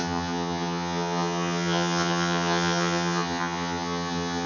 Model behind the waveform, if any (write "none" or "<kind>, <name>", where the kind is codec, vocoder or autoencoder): vocoder, HiFi-GAN